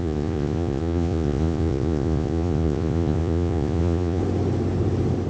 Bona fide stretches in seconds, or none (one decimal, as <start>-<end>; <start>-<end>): 4.2-5.3